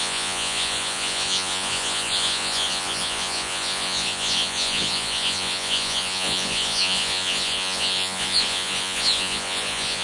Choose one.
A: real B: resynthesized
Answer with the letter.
B